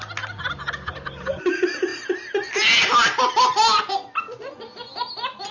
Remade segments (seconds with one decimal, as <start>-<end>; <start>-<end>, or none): none